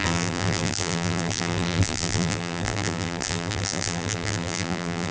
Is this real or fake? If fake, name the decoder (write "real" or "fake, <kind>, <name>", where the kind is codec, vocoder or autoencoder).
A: fake, vocoder, BigVGAN v2